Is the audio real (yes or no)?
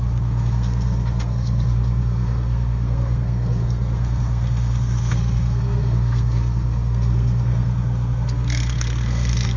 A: no